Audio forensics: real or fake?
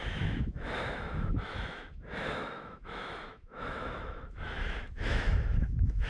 fake